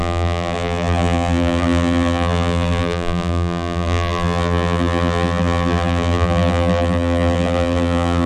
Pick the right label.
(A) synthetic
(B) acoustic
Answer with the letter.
A